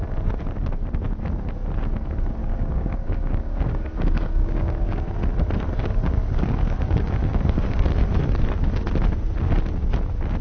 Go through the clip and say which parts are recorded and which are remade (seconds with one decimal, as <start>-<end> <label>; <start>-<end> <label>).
0.0-2.4 recorded; 2.4-5.0 remade; 5.0-5.8 recorded; 5.8-8.0 remade; 8.0-10.4 recorded